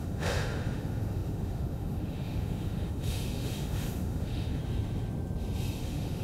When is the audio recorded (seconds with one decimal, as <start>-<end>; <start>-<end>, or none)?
4.6-5.8